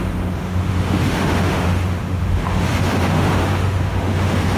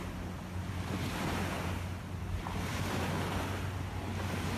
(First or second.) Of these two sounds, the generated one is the first